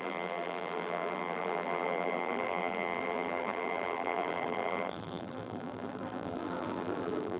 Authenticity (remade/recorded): remade